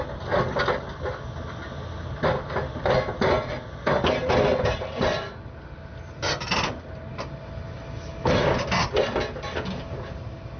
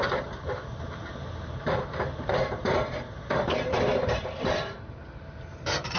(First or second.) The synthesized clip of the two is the second